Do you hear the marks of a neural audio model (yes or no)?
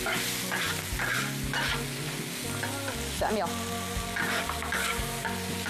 no